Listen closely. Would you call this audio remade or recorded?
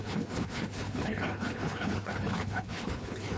remade